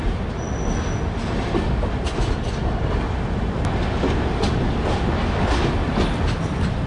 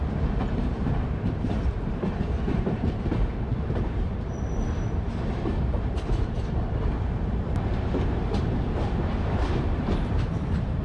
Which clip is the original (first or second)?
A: first